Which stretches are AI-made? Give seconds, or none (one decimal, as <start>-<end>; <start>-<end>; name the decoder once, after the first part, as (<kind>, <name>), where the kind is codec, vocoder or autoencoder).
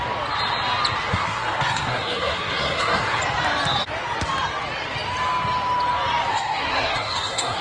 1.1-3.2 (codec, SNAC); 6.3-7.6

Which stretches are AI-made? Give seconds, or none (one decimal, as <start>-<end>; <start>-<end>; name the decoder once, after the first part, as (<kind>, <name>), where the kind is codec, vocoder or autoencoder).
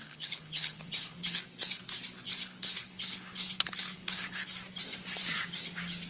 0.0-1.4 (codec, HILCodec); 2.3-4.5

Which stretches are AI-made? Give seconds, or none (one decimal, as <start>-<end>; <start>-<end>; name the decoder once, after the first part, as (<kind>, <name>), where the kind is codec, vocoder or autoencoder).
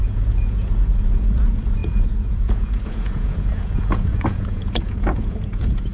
0.0-5.9 (vocoder, Vocos)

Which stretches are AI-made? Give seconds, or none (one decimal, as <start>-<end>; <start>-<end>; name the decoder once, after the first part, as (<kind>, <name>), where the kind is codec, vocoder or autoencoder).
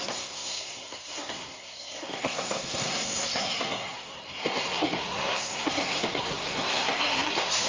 0.0-7.7 (codec, SNAC)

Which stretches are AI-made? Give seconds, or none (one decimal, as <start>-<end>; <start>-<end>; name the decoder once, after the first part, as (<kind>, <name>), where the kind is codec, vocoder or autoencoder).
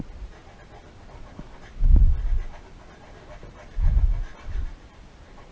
4.3-5.5 (vocoder, BigVGAN v2)